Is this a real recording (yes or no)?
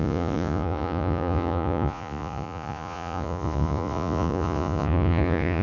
no